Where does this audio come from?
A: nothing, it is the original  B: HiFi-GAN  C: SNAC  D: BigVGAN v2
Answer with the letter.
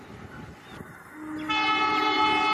A